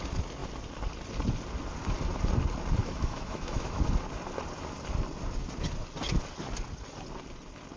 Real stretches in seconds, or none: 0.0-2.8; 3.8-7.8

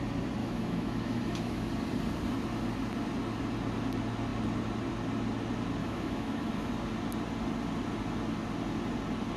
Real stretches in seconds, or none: 0.0-0.4; 1.7-5.8; 6.7-9.4

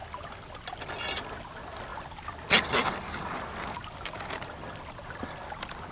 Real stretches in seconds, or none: 0.0-5.9

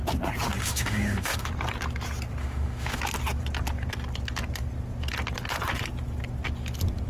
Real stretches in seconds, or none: 0.0-0.6; 1.5-2.4; 3.0-7.1